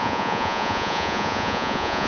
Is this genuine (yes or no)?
no